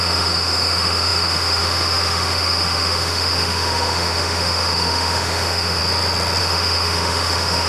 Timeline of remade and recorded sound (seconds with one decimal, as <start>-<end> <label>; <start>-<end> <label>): 0.0-5.8 remade; 5.8-6.4 recorded; 6.4-7.7 remade